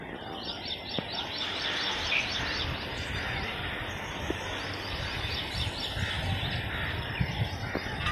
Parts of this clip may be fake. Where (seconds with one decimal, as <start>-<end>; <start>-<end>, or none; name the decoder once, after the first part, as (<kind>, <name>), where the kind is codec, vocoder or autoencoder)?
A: 0.8-5.7 (vocoder, BigVGAN v2)